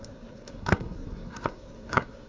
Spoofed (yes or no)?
yes